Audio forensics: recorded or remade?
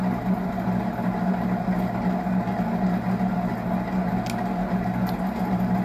recorded